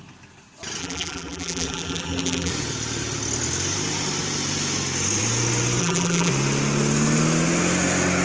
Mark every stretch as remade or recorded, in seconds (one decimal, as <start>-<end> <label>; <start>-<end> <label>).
0.0-0.8 recorded; 0.8-2.5 remade; 2.5-5.8 recorded; 5.8-6.3 remade; 6.3-8.2 recorded